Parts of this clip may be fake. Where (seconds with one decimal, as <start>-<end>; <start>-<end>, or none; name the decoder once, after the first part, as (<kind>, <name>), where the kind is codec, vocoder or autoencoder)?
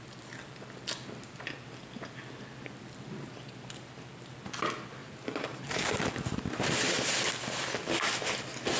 5.0-7.1 (vocoder, BigVGAN v2)